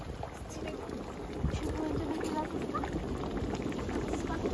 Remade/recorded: recorded